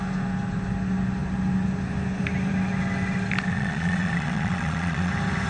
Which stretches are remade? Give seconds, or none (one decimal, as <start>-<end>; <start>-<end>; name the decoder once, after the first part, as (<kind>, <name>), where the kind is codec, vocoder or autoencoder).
3.5-5.1 (vocoder, Vocos)

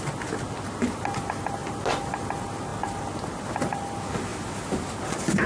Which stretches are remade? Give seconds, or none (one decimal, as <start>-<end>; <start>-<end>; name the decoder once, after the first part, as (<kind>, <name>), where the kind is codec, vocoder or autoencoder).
none